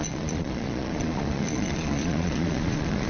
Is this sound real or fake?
fake